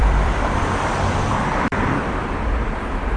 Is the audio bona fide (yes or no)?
no